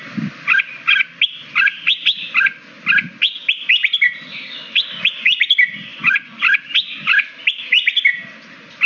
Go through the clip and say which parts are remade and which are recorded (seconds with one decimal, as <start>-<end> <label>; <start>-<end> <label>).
0.0-5.9 recorded; 5.9-6.4 remade; 6.4-8.9 recorded